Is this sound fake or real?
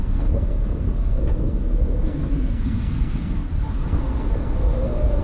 fake